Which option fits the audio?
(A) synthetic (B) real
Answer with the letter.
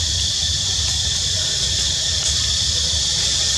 A